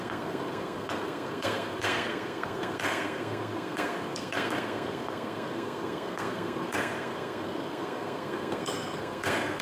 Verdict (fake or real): fake